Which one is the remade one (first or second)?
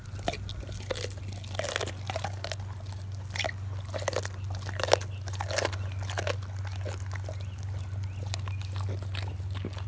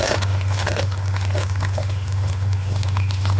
second